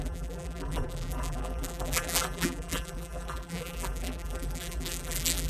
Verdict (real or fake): fake